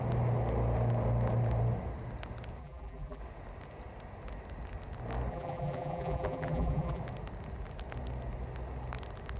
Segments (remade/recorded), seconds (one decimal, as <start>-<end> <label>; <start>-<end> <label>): 0.0-2.6 recorded; 2.6-3.2 remade; 3.2-5.3 recorded; 5.3-7.0 remade; 7.0-9.4 recorded